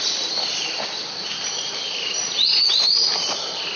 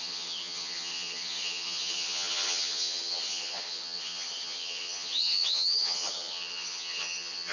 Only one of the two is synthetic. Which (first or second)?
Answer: second